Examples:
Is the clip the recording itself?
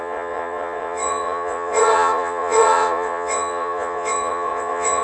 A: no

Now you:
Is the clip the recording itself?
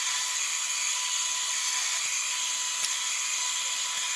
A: yes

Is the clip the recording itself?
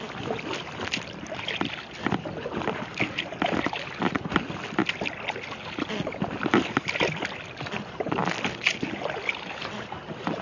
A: yes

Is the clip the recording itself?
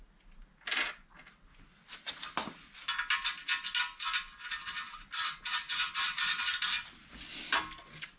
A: yes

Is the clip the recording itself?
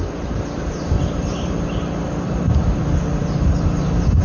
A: yes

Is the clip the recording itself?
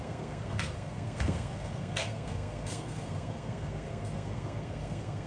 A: no